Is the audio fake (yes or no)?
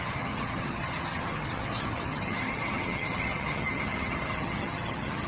yes